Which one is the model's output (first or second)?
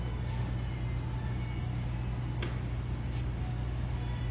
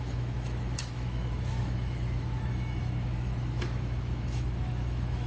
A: second